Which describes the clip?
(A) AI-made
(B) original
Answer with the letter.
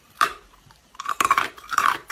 A